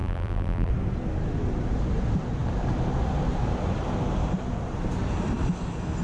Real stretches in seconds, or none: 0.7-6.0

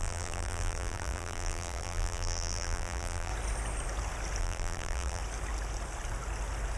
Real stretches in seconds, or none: 3.3-4.4; 5.2-6.8

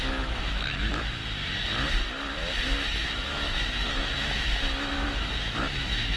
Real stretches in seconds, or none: 1.2-3.0

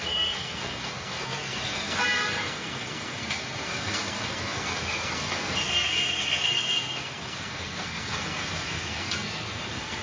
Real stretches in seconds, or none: none

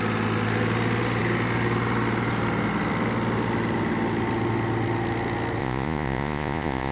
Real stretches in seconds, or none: 0.0-5.6

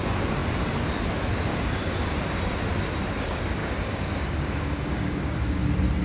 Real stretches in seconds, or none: 0.0-1.5; 2.0-3.6; 5.6-6.0

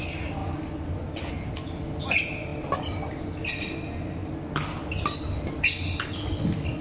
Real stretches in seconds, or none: 0.0-6.8